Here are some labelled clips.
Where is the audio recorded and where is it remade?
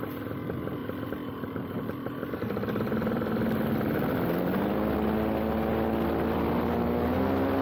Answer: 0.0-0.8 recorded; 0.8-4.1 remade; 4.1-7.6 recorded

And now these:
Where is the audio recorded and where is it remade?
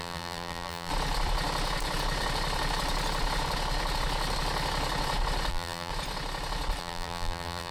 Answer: 0.0-0.9 remade; 0.9-5.5 recorded; 5.5-5.9 remade; 5.9-6.8 recorded; 6.8-7.7 remade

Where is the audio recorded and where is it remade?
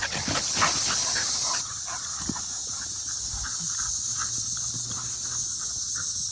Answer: 0.0-6.3 recorded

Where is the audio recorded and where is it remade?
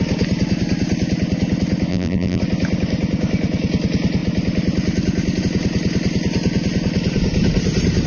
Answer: 0.0-1.9 recorded; 1.9-2.4 remade; 2.4-8.1 recorded